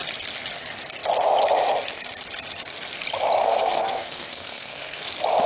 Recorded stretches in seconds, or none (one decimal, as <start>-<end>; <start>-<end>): 0.0-3.4; 5.0-5.5